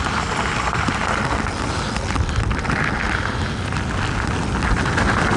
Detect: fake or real real